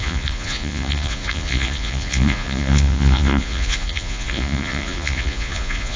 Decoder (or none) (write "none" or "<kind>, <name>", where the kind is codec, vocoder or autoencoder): vocoder, Vocos